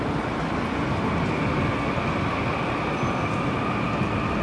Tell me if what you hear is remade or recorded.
recorded